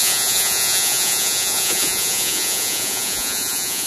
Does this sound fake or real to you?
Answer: fake